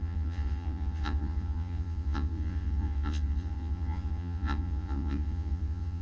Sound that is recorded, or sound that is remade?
remade